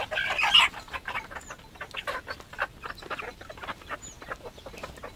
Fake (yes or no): no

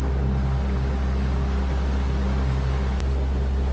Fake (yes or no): no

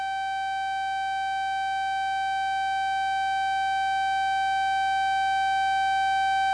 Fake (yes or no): no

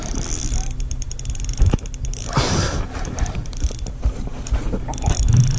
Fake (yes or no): no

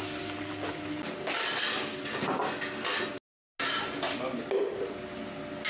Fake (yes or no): no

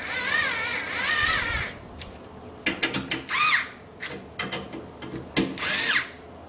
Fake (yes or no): no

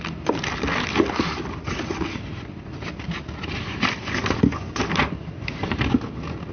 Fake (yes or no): no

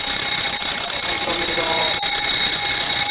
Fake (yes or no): yes